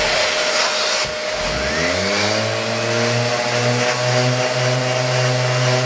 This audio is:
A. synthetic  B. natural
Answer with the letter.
B